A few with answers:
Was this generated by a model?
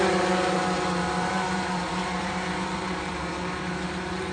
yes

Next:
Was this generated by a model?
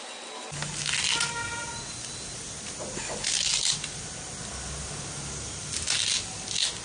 no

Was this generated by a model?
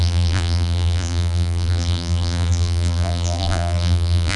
yes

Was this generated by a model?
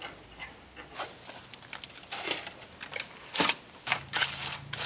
no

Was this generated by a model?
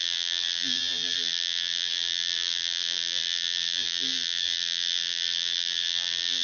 yes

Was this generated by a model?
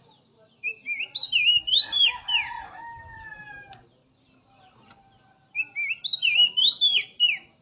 no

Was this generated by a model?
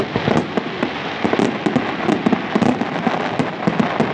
no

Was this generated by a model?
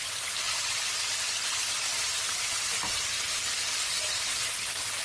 yes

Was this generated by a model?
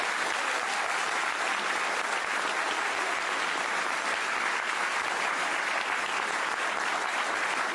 no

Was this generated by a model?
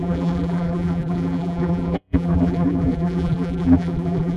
yes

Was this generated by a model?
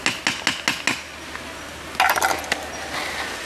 no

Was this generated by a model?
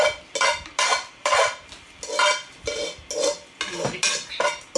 no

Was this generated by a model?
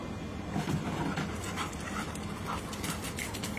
no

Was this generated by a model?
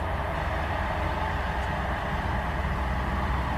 yes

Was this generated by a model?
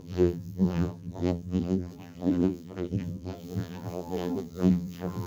yes